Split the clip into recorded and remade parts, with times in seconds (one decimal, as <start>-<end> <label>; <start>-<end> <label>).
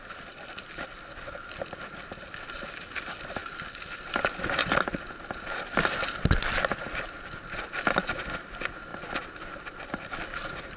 0.0-10.8 recorded